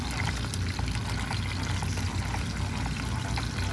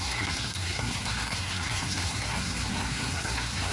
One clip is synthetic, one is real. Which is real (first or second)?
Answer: first